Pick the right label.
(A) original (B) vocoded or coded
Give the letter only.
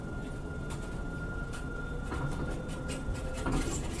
A